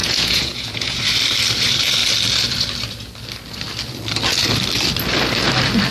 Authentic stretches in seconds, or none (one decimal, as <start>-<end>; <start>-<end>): 1.0-5.9